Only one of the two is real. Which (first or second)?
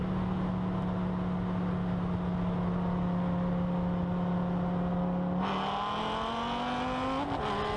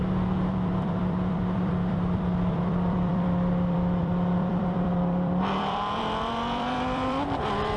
first